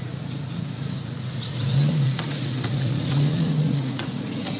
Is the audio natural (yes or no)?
no